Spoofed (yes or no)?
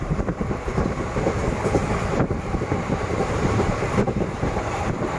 yes